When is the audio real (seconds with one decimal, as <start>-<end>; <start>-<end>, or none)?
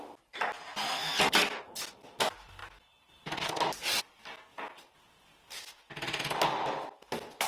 0.0-7.5